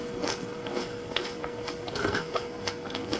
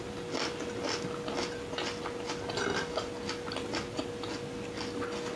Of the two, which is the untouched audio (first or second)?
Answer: second